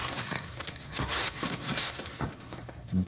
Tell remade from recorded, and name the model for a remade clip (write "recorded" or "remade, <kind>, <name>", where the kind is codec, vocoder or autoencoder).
remade, codec, SNAC